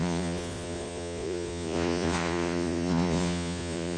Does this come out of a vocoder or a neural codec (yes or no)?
yes